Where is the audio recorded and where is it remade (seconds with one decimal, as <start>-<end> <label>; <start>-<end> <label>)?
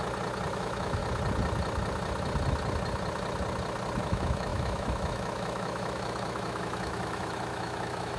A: 0.0-0.5 recorded; 0.5-1.0 remade; 1.0-4.0 recorded; 4.0-8.2 remade